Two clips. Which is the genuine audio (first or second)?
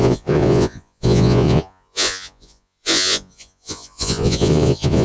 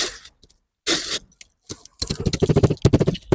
second